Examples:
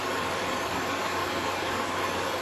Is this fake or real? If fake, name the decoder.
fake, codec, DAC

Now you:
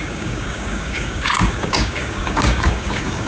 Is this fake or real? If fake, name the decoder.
fake, codec, DAC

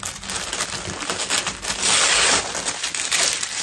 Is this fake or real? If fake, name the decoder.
real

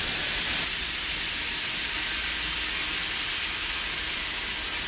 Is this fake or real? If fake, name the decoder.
real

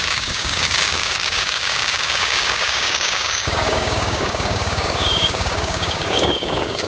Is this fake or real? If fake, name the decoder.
fake, codec, DAC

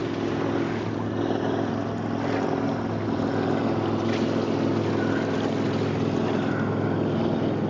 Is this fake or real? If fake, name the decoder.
real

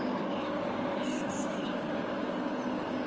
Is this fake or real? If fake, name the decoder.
fake, codec, DAC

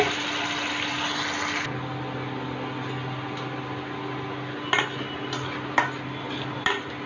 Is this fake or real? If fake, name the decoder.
real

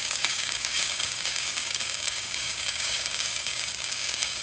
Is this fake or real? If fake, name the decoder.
fake, codec, DAC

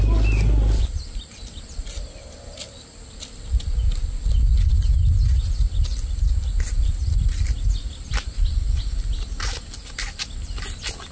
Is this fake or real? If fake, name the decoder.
real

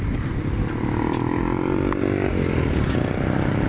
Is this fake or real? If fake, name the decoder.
real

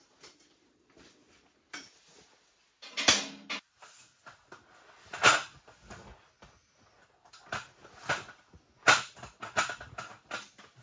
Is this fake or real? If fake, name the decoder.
real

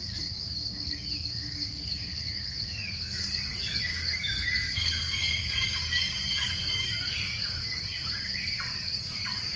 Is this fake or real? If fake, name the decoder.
fake, codec, DAC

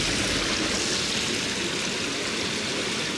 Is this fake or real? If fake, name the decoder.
real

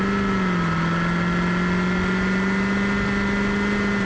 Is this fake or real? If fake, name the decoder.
real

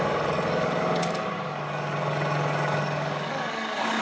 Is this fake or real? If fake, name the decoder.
fake, codec, DAC